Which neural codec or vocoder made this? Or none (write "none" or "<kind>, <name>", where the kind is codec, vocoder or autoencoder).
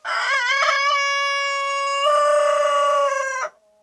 none